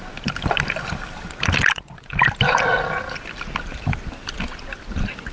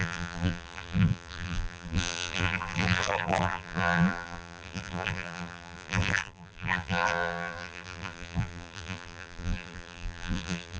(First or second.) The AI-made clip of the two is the second